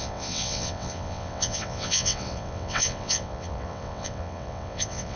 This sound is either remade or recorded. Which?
remade